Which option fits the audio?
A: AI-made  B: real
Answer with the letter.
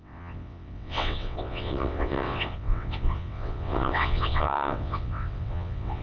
A